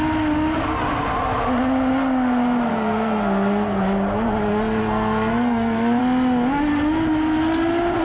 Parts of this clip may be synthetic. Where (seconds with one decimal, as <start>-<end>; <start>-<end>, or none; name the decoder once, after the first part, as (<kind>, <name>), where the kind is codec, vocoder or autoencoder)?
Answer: 2.7-3.8 (codec, SNAC); 4.8-6.0